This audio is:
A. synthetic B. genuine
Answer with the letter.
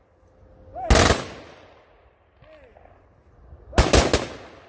B